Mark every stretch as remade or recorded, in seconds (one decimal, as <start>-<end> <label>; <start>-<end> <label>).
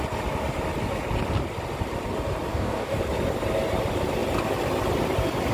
0.0-2.5 recorded; 2.5-3.0 remade; 3.0-5.5 recorded